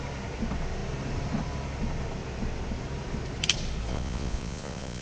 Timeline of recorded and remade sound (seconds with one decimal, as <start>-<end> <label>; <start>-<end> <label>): 0.0-3.9 recorded; 3.9-5.0 remade